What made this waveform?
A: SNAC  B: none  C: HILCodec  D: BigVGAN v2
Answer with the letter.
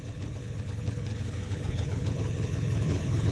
C